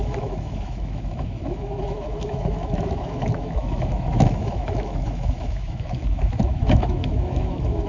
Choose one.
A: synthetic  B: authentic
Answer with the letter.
A